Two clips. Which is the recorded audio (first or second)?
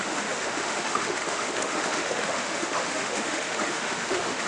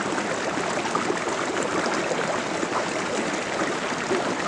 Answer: second